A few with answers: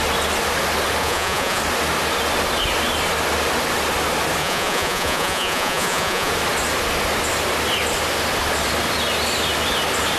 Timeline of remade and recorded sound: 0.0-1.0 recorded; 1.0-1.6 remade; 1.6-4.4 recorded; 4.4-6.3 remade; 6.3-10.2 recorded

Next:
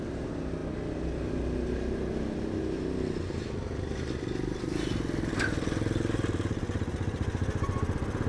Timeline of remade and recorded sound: 0.0-8.3 recorded

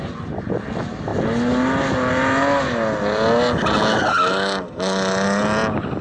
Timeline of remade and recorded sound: 0.0-6.0 recorded

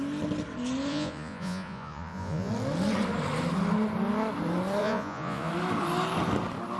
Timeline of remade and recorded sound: 0.0-0.9 recorded; 0.9-2.5 remade; 2.5-4.8 recorded; 4.8-5.5 remade; 5.5-6.8 recorded

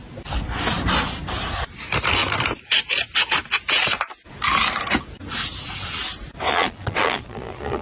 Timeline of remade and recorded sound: 0.0-6.5 recorded; 6.5-7.8 remade

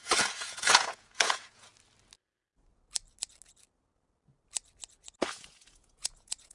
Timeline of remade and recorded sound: 0.0-1.7 remade; 1.7-5.3 recorded; 5.3-6.5 remade